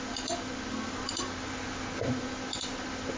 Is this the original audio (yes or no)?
yes